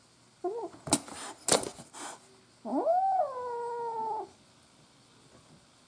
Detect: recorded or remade recorded